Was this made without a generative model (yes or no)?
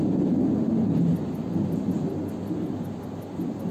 yes